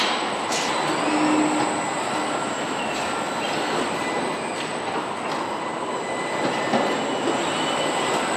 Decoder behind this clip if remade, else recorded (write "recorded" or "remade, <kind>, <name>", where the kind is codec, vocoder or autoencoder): recorded